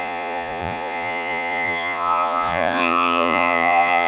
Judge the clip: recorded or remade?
remade